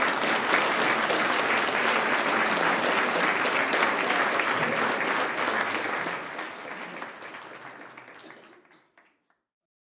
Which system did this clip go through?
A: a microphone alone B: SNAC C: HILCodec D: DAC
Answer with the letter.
A